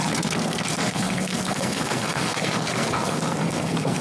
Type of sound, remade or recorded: remade